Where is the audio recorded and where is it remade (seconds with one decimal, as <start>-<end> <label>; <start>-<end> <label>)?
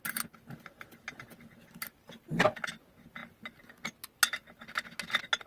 0.0-5.5 recorded